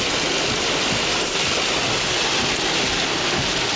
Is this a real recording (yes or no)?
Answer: yes